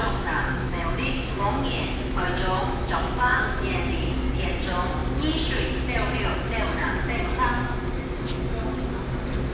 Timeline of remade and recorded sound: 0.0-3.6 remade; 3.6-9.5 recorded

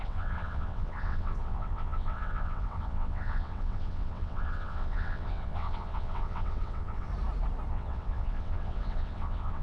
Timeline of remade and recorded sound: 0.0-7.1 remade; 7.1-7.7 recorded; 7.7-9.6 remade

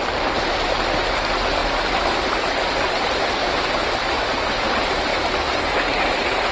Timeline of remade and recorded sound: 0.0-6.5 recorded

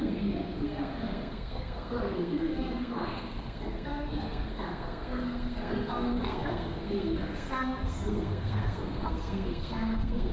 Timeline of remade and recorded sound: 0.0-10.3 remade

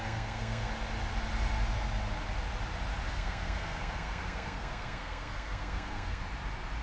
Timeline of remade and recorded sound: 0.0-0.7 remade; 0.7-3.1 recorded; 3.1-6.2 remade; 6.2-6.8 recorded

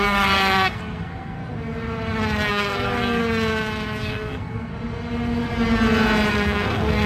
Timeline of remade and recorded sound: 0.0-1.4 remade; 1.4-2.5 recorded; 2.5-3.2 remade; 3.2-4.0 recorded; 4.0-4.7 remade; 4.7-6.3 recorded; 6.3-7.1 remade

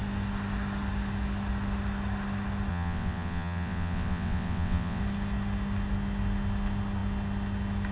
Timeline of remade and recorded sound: 0.0-2.7 recorded; 2.7-5.0 remade; 5.0-7.9 recorded

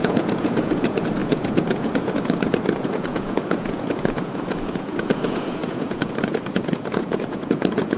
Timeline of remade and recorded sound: 0.0-8.0 remade